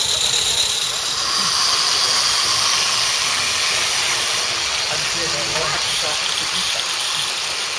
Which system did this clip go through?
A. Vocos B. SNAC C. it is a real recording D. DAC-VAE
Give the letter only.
C